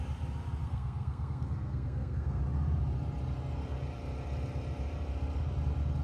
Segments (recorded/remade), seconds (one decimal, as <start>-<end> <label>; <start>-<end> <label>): 0.0-0.6 recorded; 0.6-2.4 remade; 2.4-6.0 recorded